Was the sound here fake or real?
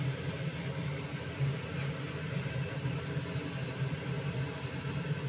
real